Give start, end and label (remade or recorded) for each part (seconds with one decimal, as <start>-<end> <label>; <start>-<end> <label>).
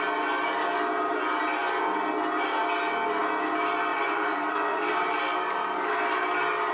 0.0-3.9 recorded; 3.9-4.9 remade; 4.9-6.7 recorded